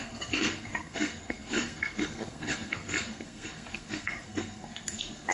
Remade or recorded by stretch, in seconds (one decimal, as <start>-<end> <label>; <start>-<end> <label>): 0.0-5.3 remade

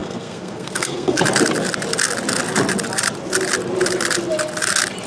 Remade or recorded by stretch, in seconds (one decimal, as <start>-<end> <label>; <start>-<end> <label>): 0.0-1.2 remade; 1.2-5.1 recorded